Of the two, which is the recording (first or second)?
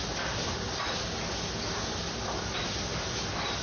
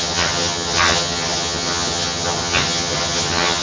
first